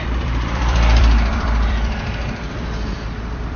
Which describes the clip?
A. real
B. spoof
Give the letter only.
B